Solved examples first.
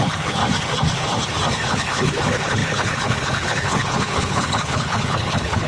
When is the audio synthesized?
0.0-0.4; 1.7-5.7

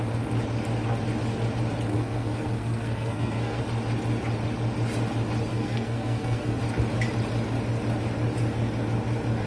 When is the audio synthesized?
1.9-3.6; 5.5-6.6